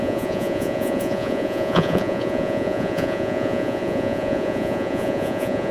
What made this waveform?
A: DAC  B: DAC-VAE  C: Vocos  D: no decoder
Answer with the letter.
C